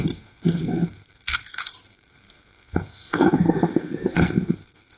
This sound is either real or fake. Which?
fake